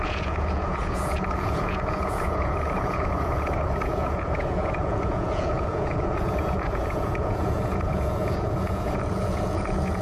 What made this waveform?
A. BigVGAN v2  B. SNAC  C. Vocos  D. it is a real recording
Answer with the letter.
C